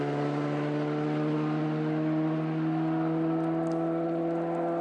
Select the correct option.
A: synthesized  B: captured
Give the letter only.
B